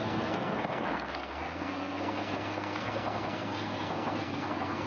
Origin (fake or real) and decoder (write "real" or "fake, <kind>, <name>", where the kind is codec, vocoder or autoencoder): fake, codec, SNAC